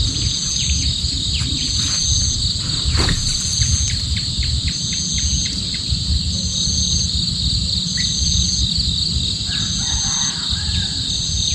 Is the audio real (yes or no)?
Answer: yes